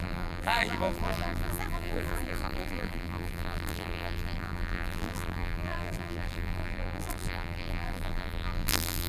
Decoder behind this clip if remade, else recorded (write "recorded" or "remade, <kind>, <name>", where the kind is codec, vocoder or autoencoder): remade, vocoder, BigVGAN v2